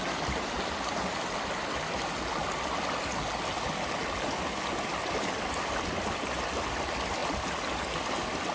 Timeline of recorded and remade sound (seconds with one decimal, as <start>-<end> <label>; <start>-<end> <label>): 0.0-8.5 recorded